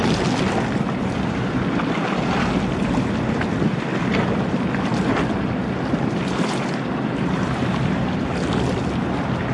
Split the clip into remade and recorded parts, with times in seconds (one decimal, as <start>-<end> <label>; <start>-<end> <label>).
0.0-9.5 recorded